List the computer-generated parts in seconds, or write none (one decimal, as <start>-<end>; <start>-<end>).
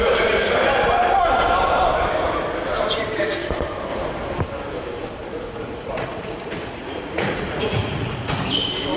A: 5.2-8.5